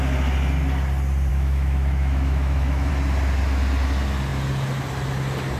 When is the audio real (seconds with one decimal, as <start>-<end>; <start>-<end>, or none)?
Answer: 0.0-1.3; 2.9-5.6